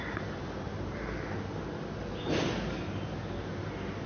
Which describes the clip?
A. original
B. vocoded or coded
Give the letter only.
A